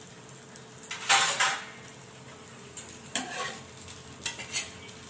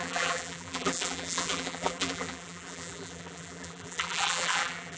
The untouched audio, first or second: first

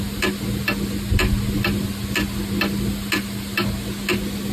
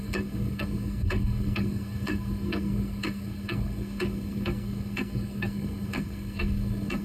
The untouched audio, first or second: first